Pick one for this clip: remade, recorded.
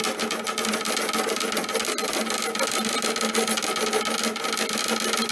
recorded